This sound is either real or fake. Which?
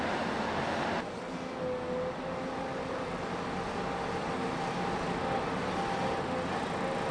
real